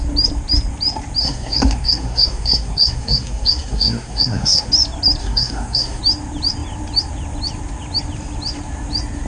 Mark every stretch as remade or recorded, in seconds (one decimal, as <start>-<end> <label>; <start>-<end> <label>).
0.0-1.2 recorded; 1.2-4.7 remade; 4.7-5.2 recorded; 5.2-6.0 remade; 6.0-9.3 recorded